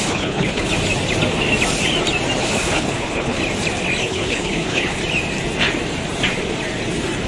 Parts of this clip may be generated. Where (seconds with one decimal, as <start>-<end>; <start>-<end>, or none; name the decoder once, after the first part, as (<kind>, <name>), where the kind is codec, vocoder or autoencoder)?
0.0-0.7 (codec, HILCodec); 2.4-3.4; 4.0-5.0